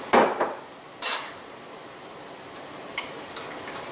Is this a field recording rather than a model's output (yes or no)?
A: yes